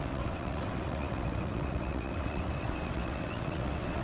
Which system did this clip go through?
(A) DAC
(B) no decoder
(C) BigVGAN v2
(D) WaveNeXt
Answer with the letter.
D